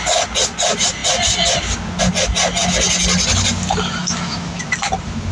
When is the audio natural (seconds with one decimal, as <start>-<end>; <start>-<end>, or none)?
0.0-4.0; 4.6-5.3